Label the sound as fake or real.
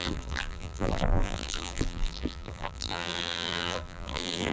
fake